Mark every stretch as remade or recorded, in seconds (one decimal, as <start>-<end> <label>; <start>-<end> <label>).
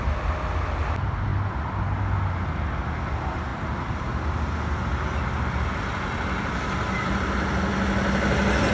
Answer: 0.0-8.7 recorded